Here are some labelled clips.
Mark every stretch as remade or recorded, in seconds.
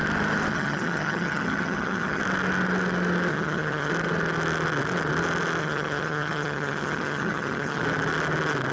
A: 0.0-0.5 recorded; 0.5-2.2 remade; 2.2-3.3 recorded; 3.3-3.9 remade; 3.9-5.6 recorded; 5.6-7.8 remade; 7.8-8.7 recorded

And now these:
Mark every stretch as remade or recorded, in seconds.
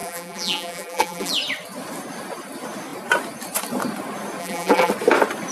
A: 0.0-1.3 remade; 1.3-4.4 recorded; 4.4-4.9 remade; 4.9-5.5 recorded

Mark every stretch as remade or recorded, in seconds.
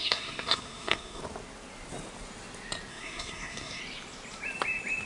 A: 0.0-1.2 remade; 1.2-2.9 recorded; 2.9-3.8 remade; 3.8-5.1 recorded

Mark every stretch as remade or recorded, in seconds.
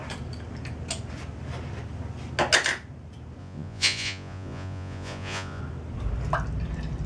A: 0.0-3.4 recorded; 3.4-5.6 remade; 5.6-7.1 recorded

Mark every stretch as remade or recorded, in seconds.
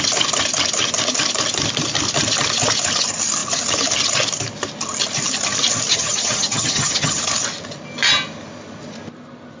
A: 0.0-5.9 recorded; 5.9-7.2 remade; 7.2-9.6 recorded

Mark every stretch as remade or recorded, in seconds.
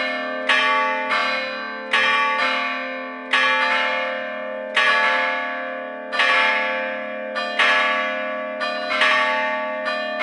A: 0.0-10.2 recorded